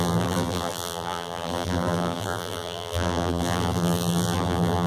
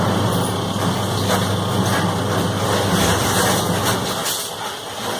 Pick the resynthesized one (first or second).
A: first